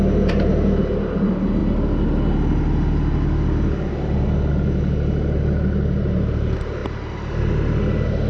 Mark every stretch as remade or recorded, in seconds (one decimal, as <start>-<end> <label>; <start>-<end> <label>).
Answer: 0.0-8.3 recorded